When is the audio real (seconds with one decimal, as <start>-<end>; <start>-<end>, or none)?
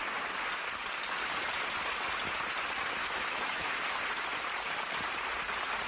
0.0-3.0; 3.8-5.9